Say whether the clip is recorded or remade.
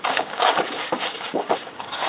remade